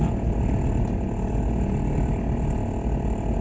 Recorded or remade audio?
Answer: recorded